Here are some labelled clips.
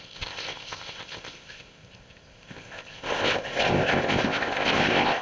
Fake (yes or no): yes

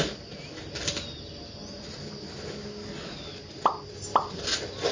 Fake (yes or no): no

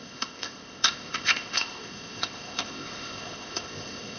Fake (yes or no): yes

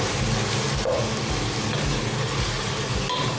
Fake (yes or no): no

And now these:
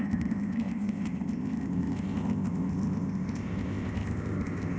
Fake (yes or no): yes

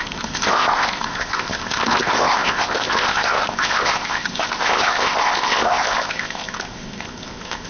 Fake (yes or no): yes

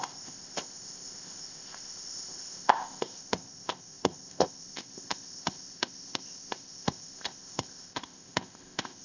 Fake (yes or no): yes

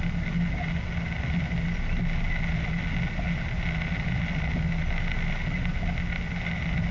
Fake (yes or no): no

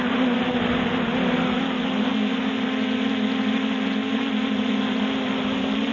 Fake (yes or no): no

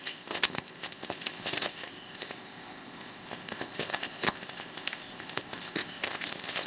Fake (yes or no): yes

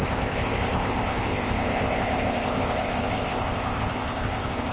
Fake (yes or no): yes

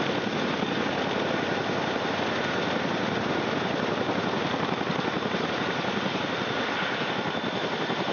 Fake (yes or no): no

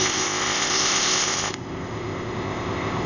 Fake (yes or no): yes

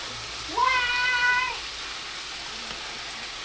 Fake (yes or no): no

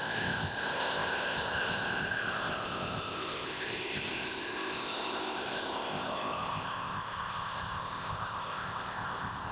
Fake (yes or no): yes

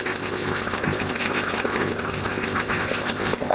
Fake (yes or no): yes